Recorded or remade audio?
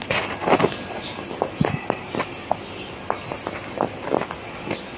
recorded